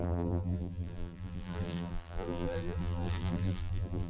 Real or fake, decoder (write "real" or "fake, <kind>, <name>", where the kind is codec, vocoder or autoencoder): fake, vocoder, BigVGAN v2